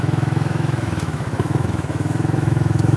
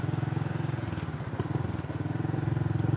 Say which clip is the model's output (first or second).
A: first